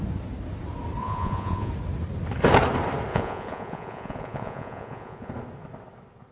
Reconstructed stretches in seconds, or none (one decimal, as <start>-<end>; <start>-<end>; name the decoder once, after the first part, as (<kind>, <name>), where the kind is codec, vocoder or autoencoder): 1.0-1.7 (vocoder, Vocos); 3.1-5.3